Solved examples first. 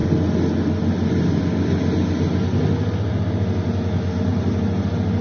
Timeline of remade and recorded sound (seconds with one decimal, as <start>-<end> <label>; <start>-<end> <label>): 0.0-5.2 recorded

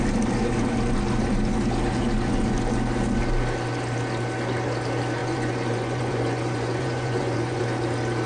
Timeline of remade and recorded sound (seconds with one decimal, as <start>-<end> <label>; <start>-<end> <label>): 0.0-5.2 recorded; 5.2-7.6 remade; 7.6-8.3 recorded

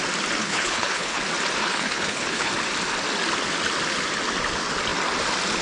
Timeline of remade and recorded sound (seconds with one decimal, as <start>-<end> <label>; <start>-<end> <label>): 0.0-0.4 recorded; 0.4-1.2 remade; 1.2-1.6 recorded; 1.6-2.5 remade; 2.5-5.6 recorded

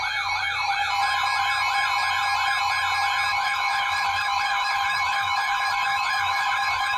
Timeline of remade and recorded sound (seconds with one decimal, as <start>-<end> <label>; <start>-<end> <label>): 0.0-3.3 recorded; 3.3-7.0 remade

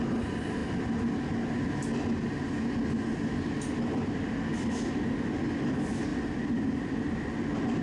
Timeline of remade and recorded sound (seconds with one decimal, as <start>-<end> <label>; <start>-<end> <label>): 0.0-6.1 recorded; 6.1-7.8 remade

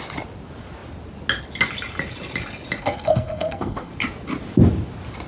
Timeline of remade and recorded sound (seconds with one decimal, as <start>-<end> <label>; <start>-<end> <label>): 0.0-2.8 recorded; 2.8-3.9 remade; 3.9-5.3 recorded